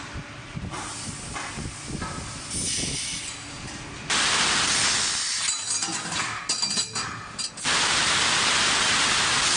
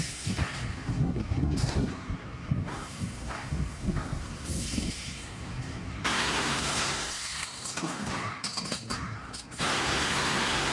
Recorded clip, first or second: first